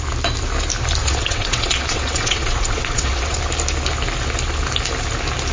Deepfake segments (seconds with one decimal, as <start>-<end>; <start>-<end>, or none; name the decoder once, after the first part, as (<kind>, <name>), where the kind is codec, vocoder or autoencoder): 1.0-3.4 (vocoder, WaveNeXt)